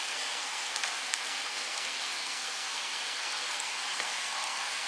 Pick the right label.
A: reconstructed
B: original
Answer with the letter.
A